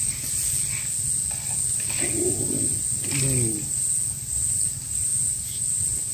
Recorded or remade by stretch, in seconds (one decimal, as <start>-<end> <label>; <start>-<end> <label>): 0.0-6.1 recorded